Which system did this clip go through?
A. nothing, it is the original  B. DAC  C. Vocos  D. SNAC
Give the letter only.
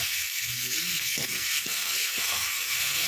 D